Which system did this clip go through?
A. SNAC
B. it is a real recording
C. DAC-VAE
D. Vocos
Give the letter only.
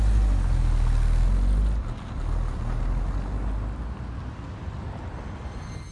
B